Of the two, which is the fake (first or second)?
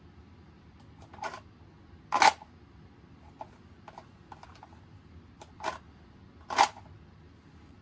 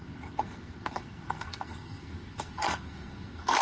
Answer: second